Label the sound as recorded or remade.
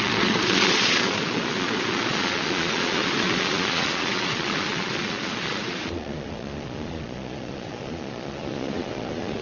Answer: remade